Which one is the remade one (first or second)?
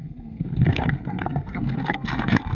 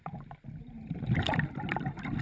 first